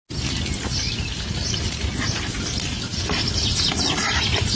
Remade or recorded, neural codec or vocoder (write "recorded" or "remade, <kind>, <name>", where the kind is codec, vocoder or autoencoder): recorded